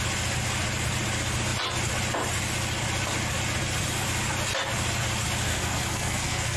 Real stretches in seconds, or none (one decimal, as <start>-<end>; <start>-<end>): 0.0-5.5